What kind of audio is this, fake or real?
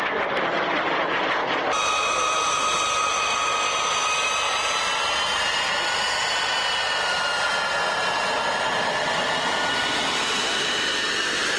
real